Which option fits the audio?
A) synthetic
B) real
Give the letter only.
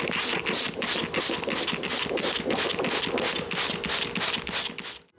B